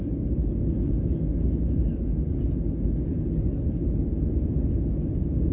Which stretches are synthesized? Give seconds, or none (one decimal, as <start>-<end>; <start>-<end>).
none